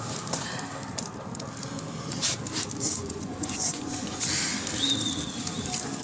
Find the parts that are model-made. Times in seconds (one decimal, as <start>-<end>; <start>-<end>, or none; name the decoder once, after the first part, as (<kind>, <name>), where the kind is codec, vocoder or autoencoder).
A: 3.0-4.2 (vocoder, Vocos)